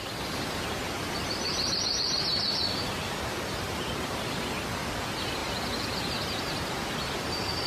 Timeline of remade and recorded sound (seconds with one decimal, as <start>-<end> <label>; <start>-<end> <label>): 0.0-7.7 remade